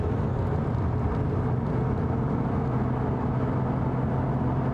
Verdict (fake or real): real